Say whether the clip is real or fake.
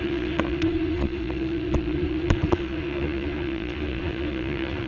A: fake